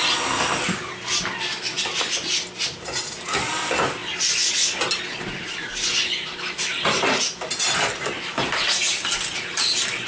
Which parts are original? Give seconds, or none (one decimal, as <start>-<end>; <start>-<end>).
0.0-10.1